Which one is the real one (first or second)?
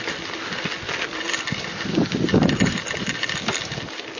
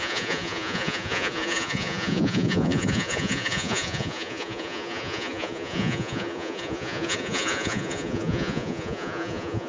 first